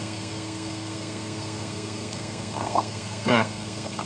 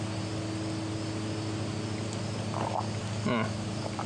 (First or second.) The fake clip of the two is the first